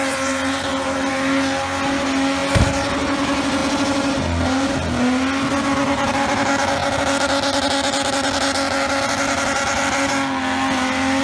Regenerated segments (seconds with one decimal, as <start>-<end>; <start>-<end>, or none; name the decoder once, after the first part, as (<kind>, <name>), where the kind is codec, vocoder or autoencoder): 0.0-1.1 (vocoder, BigVGAN v2)